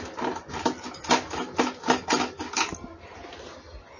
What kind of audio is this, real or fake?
real